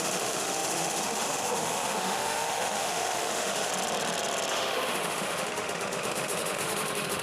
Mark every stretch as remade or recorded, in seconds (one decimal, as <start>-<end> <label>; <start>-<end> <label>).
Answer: 0.0-3.7 remade; 3.7-4.5 recorded; 4.5-7.2 remade